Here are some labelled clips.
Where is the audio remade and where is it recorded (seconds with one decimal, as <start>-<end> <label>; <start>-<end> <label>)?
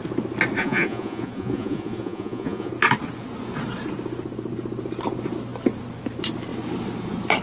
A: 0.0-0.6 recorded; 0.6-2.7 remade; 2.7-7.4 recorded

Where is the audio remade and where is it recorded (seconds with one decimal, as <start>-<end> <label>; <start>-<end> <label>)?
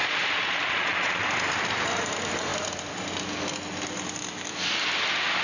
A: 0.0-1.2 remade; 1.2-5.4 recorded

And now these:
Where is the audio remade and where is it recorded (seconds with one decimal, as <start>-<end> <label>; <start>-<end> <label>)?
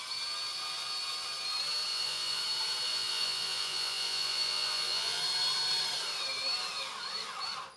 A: 0.0-1.9 recorded; 1.9-2.4 remade; 2.4-2.9 recorded; 2.9-5.2 remade; 5.2-7.8 recorded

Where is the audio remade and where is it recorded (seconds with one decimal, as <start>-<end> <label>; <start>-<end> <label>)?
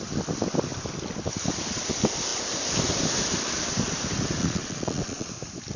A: 0.0-4.4 recorded; 4.4-5.3 remade; 5.3-5.8 recorded